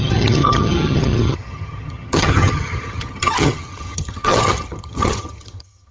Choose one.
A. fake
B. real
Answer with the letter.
A